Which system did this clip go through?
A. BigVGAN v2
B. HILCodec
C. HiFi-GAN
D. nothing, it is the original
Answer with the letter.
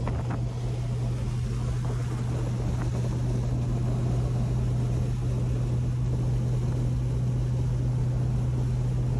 D